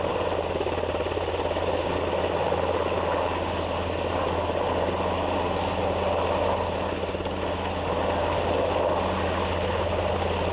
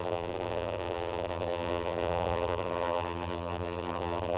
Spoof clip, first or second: second